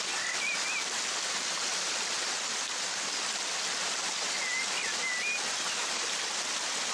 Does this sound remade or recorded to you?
recorded